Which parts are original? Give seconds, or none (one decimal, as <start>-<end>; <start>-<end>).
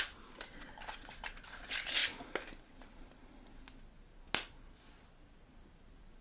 2.0-2.7; 3.2-5.8